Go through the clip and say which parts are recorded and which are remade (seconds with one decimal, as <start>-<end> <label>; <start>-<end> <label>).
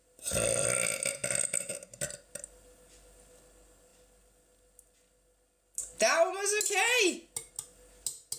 0.0-8.4 recorded